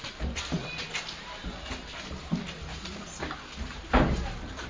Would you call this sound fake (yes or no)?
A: no